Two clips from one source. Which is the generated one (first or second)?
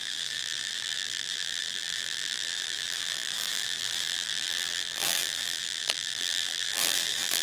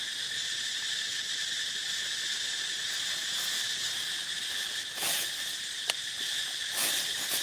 first